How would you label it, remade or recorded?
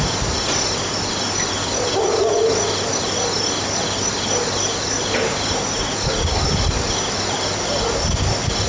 recorded